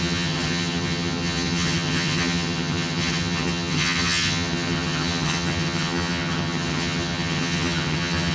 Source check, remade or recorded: remade